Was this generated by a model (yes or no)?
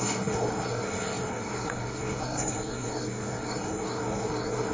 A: yes